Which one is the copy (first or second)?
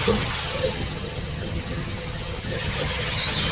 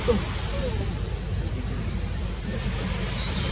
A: first